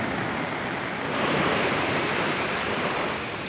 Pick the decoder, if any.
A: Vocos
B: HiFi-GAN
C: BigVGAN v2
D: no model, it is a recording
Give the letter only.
D